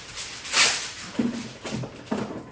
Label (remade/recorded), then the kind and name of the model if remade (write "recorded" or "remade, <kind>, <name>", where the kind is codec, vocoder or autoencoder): recorded